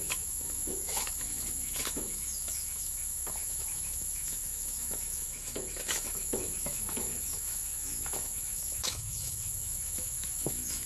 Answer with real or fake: fake